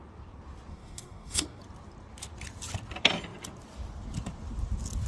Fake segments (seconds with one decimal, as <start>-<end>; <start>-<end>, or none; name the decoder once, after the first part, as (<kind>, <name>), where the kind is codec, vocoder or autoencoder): 0.7-1.6 (codec, DAC)